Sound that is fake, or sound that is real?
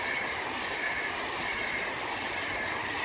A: real